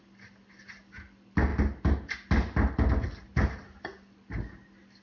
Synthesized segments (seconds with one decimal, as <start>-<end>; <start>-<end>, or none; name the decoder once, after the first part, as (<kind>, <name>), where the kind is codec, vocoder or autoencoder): none